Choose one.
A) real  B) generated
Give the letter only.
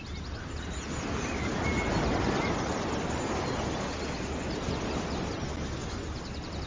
A